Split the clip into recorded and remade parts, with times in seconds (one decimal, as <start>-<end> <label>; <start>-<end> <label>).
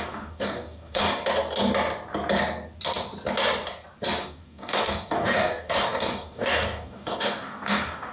0.0-1.2 remade; 1.2-4.2 recorded; 4.2-8.1 remade